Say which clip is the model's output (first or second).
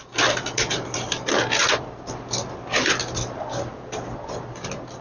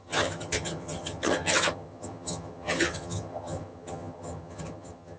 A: second